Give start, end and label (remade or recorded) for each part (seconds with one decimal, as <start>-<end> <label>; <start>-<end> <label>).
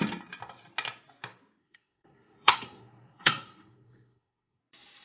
0.0-1.6 recorded; 1.6-4.6 remade; 4.6-5.0 recorded